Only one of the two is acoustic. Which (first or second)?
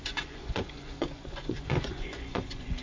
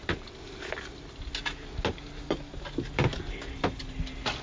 second